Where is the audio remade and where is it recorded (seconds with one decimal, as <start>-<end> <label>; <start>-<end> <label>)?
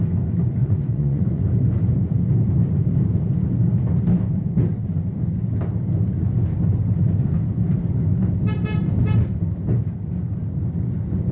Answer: 0.0-0.6 recorded; 0.6-1.4 remade; 1.4-11.3 recorded